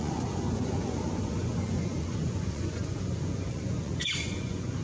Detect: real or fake fake